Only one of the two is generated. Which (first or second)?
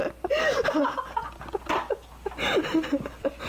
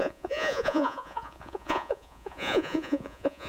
second